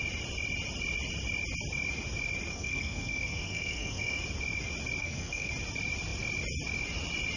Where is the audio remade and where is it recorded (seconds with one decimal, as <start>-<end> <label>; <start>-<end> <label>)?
0.0-2.5 recorded; 2.5-4.2 remade; 4.2-5.0 recorded; 5.0-5.5 remade; 5.5-7.4 recorded